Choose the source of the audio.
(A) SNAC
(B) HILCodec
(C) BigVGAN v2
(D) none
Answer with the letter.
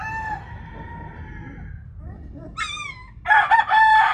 D